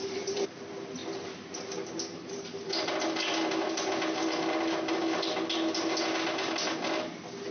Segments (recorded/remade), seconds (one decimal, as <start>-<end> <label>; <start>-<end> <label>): 0.0-7.5 recorded